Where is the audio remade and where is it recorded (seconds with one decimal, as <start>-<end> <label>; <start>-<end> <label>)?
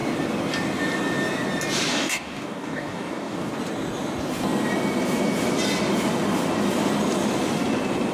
0.0-1.9 recorded; 1.9-3.5 remade; 3.5-8.1 recorded